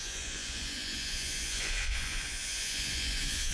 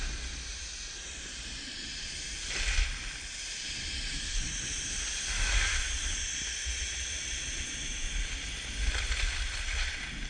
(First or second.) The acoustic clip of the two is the second